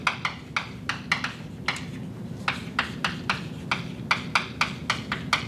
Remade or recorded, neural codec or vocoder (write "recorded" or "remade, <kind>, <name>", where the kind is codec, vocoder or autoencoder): recorded